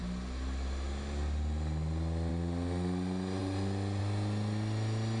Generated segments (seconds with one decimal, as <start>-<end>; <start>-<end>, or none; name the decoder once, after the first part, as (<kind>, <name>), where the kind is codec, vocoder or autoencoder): none